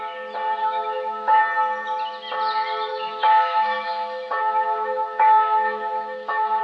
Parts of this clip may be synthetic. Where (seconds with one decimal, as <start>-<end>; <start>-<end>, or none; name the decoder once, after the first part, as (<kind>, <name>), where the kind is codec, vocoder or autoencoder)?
0.6-1.4 (autoencoder, DAC-VAE); 2.9-6.6